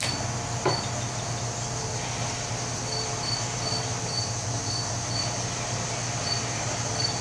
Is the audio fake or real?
real